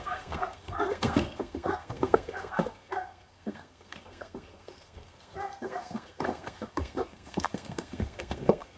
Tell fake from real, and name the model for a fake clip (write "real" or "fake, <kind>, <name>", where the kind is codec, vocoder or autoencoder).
fake, codec, SNAC